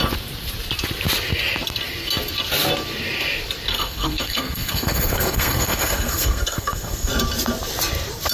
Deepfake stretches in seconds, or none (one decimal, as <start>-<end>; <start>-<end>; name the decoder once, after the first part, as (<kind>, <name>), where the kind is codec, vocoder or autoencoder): 3.7-7.1 (codec, SNAC)